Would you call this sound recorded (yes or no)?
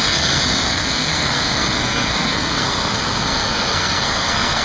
no